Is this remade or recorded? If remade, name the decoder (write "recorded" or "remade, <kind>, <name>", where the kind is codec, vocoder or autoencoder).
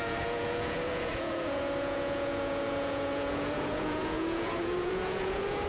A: remade, vocoder, Vocos